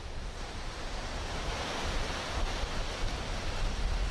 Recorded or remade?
recorded